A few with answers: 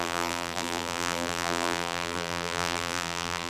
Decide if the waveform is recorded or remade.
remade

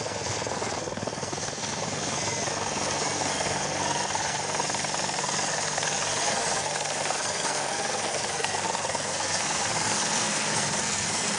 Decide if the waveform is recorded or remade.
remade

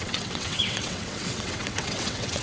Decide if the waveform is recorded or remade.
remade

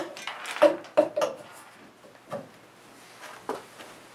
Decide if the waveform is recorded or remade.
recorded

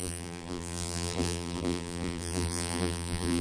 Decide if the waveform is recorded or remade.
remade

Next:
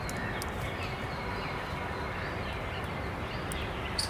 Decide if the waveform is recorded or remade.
recorded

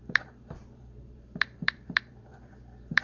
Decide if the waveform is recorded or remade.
remade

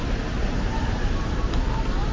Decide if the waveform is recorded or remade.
recorded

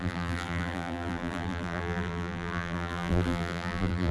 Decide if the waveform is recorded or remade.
remade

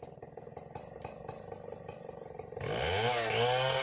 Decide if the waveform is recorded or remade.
recorded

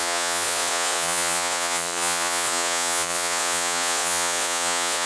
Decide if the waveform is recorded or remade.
remade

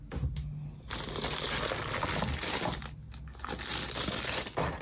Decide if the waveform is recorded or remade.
recorded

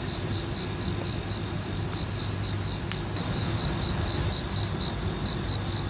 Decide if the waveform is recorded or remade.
recorded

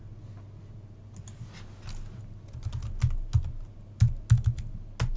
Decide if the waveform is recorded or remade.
recorded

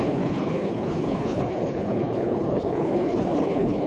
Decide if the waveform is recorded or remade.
remade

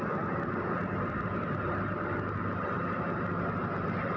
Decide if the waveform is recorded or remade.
recorded